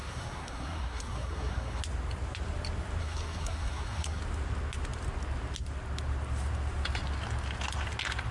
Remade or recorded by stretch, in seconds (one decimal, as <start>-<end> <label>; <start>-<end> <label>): 0.0-1.8 remade; 1.8-3.0 recorded; 3.0-4.2 remade; 4.2-8.3 recorded